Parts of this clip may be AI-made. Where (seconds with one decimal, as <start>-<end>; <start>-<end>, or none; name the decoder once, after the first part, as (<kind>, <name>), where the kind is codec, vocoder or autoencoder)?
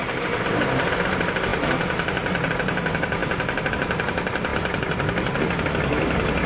none